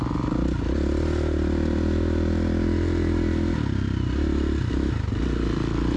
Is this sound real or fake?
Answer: real